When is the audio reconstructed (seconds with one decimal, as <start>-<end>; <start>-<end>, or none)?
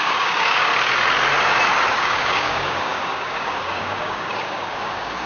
0.0-0.7; 2.0-5.3